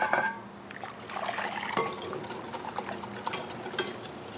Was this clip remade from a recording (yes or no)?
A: no